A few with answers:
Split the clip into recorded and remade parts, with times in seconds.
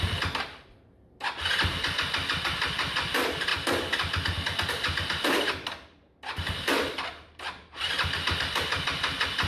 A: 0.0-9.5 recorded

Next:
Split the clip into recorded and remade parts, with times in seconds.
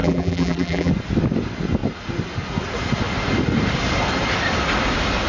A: 0.0-0.9 remade; 0.9-5.3 recorded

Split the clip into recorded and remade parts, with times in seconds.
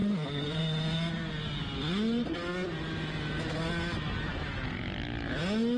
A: 0.0-0.6 remade; 0.6-5.8 recorded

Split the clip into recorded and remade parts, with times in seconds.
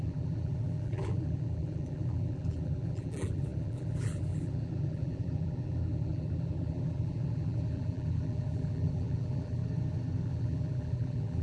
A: 0.0-9.6 remade; 9.6-10.2 recorded; 10.2-11.4 remade